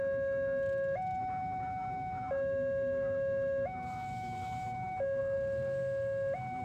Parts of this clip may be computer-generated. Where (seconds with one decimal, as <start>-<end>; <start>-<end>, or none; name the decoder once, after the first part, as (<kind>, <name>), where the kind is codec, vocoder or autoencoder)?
1.2-5.2 (autoencoder, DAC-VAE)